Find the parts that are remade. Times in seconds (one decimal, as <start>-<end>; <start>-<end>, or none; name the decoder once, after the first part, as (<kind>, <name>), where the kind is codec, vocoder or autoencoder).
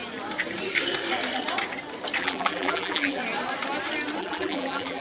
2.2-3.2 (vocoder, BigVGAN v2); 4.2-5.0